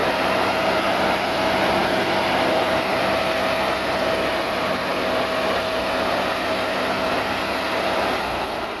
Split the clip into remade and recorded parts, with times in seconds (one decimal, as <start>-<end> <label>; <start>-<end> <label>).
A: 0.0-1.0 remade; 1.0-8.8 recorded